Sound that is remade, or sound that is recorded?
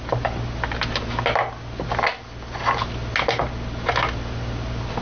recorded